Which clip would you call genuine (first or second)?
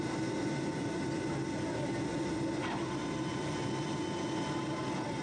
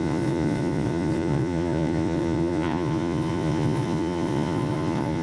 first